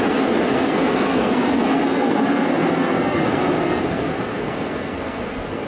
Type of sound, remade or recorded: remade